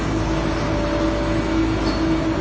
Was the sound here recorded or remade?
recorded